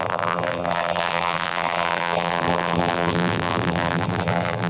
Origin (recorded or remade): remade